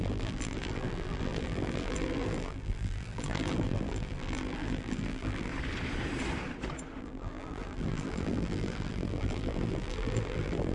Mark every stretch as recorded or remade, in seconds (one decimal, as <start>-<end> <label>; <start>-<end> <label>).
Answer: 0.0-5.5 remade; 5.5-7.0 recorded; 7.0-10.7 remade